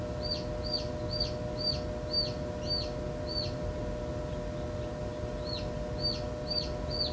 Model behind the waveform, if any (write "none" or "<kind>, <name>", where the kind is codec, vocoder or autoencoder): none